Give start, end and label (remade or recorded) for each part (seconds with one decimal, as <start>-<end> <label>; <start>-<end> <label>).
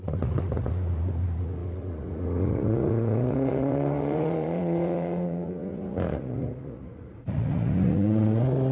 0.0-8.7 remade